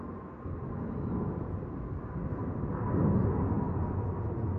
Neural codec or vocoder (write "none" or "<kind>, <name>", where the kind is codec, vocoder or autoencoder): none